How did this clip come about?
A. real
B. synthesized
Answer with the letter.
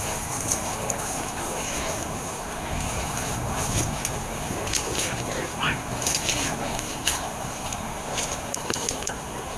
B